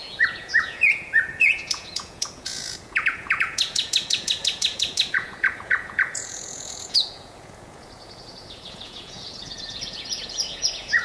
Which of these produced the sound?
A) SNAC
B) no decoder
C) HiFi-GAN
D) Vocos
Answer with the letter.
D